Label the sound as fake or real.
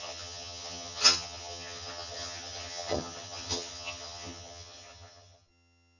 fake